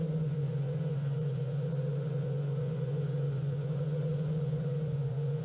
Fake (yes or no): yes